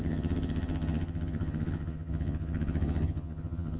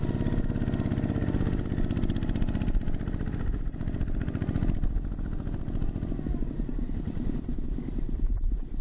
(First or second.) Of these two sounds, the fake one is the first